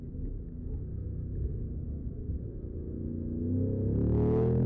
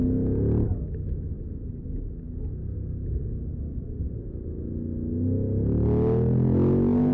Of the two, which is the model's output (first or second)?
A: first